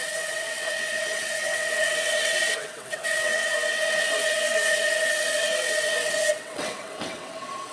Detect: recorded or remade remade